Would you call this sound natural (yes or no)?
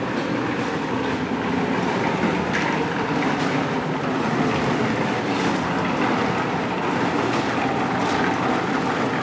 yes